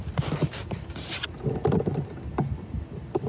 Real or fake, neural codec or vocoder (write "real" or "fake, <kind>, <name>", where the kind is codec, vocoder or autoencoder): real